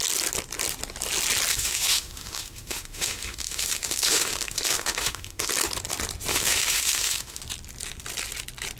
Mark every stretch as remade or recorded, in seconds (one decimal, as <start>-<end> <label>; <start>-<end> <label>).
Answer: 0.0-1.5 recorded; 1.5-5.5 remade; 5.5-6.3 recorded; 6.3-7.4 remade; 7.4-8.8 recorded